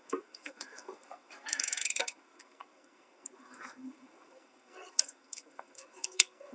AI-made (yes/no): yes